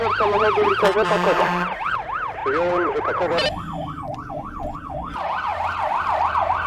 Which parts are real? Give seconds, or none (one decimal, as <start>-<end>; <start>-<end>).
none